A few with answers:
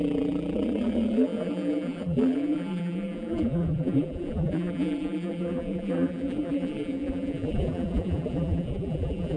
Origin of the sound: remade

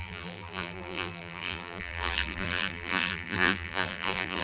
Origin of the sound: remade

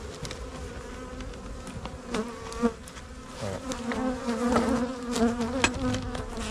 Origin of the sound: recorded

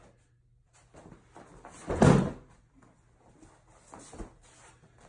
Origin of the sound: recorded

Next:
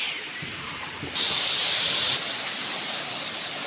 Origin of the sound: recorded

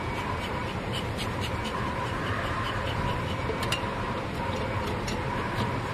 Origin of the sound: remade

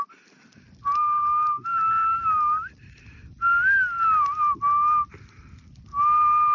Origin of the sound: recorded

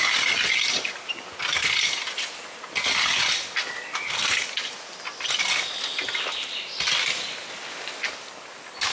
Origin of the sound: recorded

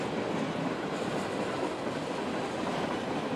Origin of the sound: recorded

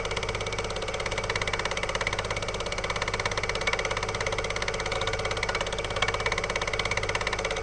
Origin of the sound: recorded